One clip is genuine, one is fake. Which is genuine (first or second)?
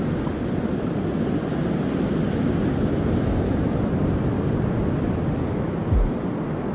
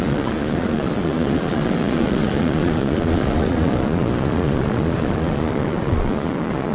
first